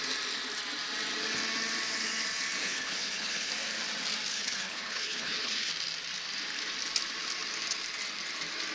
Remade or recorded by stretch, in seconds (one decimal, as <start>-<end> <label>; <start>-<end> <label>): 0.0-2.6 recorded; 2.6-3.5 remade; 3.5-4.3 recorded; 4.3-5.7 remade; 5.7-8.7 recorded